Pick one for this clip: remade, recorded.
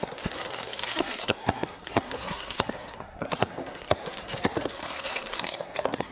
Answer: remade